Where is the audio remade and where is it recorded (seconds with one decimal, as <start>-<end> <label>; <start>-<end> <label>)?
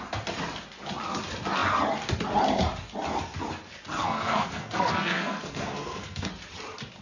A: 0.0-4.0 recorded; 4.0-6.3 remade; 6.3-7.0 recorded